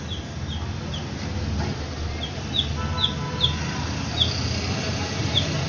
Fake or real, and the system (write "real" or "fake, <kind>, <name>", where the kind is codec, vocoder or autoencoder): real